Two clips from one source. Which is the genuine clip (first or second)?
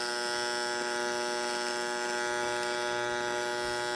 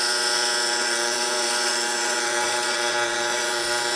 first